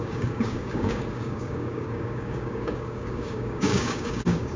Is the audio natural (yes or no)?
no